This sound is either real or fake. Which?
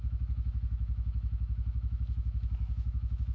fake